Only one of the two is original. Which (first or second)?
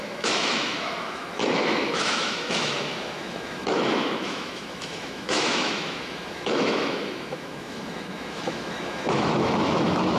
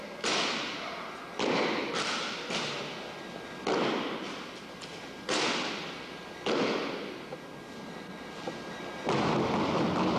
second